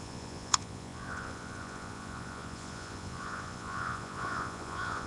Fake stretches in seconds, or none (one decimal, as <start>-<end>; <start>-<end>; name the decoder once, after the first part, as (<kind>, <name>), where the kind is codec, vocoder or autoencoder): 0.0-5.1 (vocoder, Vocos)